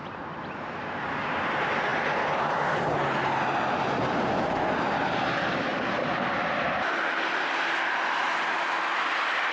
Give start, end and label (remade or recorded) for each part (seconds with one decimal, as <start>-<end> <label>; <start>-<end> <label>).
0.0-9.5 recorded